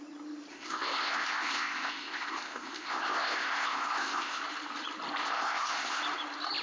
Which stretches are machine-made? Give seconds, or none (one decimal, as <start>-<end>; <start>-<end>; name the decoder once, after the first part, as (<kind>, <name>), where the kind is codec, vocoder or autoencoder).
0.5-4.4 (codec, ZipCodec); 5.2-6.0